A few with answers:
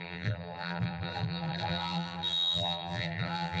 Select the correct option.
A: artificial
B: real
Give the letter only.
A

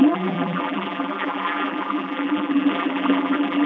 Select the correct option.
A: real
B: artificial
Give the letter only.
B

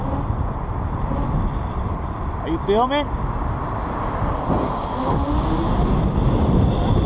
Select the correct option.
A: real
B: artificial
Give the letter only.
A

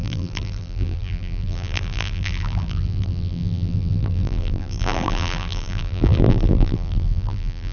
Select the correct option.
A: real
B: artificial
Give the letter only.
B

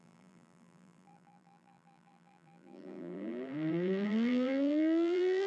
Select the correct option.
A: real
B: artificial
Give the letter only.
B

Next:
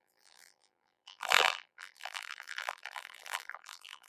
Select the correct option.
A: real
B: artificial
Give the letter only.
B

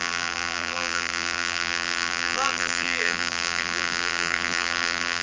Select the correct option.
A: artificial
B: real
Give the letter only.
A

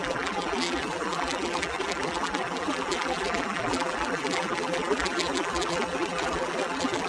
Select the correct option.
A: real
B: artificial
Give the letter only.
B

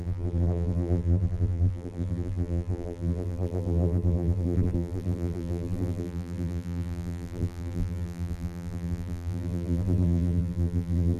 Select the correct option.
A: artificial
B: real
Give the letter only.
A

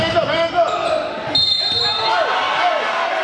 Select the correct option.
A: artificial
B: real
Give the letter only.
B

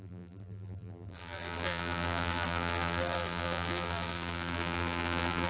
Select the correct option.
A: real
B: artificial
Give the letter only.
B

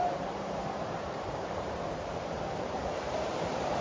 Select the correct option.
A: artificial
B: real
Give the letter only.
A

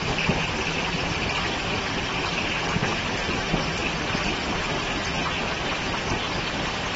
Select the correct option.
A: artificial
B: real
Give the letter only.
B